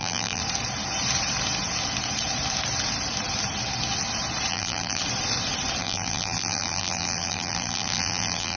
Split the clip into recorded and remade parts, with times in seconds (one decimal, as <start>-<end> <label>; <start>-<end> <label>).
0.0-0.4 remade; 0.4-4.5 recorded; 4.5-5.0 remade; 5.0-5.8 recorded; 5.8-8.6 remade